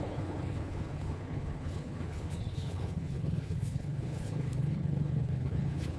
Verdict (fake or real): fake